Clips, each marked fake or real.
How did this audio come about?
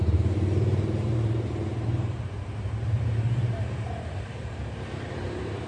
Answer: fake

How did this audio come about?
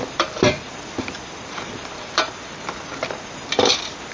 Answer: fake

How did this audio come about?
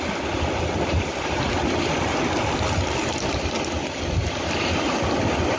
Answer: real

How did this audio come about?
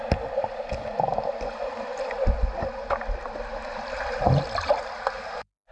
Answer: real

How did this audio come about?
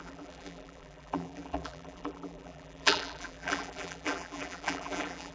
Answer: fake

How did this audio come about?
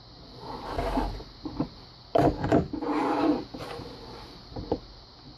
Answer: real